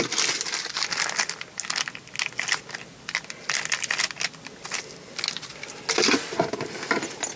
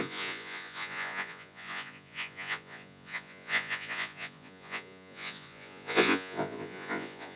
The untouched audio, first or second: first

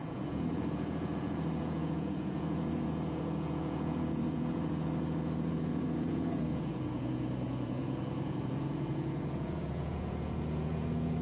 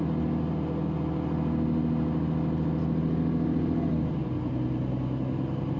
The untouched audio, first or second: second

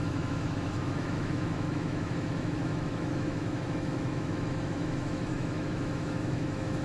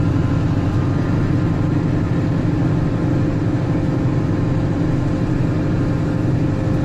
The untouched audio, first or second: second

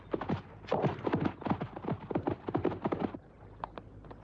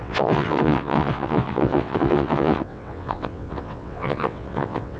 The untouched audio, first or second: first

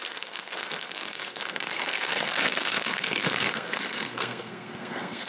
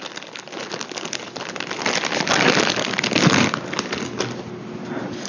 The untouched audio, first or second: second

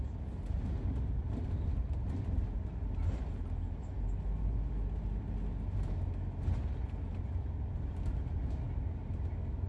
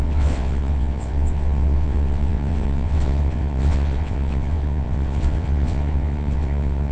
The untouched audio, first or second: first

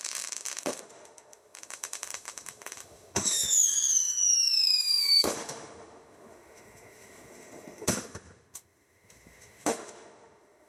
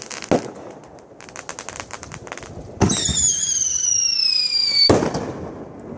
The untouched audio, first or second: second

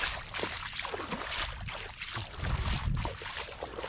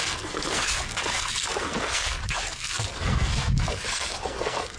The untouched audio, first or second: first